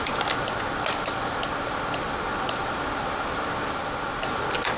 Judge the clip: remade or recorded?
recorded